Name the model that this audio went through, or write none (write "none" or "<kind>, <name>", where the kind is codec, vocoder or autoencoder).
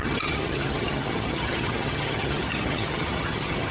vocoder, HiFi-GAN